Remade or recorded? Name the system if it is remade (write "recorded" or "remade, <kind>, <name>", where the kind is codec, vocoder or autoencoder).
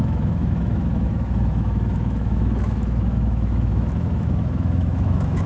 remade, autoencoder, DAC-VAE